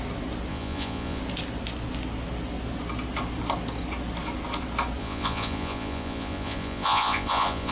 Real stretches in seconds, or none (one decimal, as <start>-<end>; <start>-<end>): 0.0-0.5; 1.2-5.0